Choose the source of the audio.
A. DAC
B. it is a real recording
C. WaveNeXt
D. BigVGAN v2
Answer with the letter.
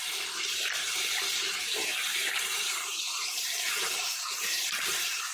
D